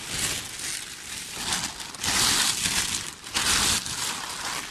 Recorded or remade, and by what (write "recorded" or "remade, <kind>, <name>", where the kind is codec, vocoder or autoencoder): recorded